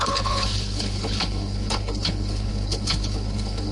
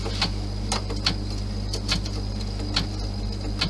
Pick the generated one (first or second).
first